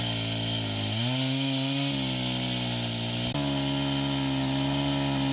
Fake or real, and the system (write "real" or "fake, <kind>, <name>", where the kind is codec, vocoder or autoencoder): real